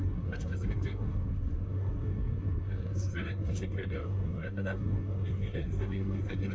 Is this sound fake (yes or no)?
yes